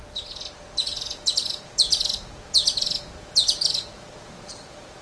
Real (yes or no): no